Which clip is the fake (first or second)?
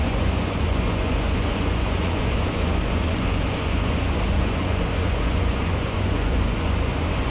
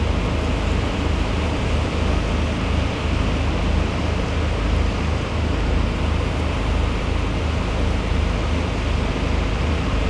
first